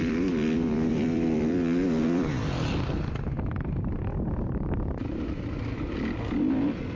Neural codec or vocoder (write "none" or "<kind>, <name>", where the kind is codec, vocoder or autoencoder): vocoder, BigVGAN v2